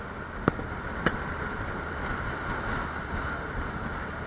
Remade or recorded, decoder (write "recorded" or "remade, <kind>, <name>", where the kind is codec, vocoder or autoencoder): recorded